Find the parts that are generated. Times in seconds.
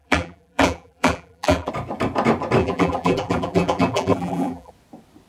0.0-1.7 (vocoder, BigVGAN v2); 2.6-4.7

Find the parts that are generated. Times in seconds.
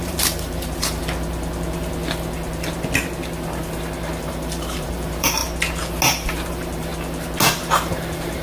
0.0-1.0 (vocoder, BigVGAN v2); 4.2-5.4; 6.5-6.9; 7.9-8.4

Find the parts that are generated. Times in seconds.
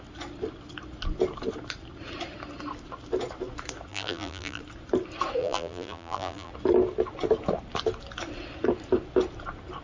3.9-4.6 (vocoder, BigVGAN v2); 5.4-6.5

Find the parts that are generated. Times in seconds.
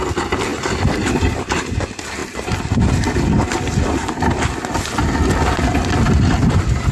0.5-1.1 (vocoder, BigVGAN v2); 2.2-3.0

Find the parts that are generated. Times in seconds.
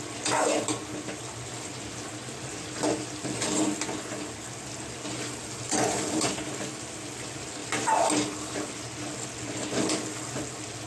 7.6-9.0 (vocoder, BigVGAN v2)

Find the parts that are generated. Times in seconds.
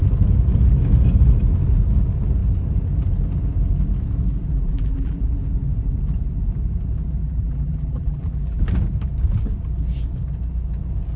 4.5-5.2 (vocoder, BigVGAN v2); 7.2-8.6